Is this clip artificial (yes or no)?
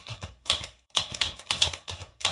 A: yes